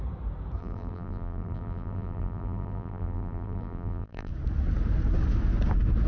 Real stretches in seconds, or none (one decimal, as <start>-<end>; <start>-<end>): 0.0-0.6; 4.3-6.1